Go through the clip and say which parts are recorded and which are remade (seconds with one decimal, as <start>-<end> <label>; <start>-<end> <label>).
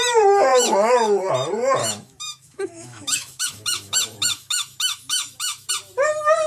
0.0-0.5 recorded; 0.5-1.3 remade; 1.3-1.8 recorded; 1.8-5.7 remade; 5.7-6.5 recorded